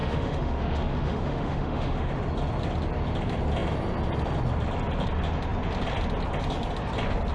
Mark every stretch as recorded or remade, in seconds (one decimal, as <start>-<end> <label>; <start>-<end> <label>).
0.0-2.1 remade; 2.1-7.3 recorded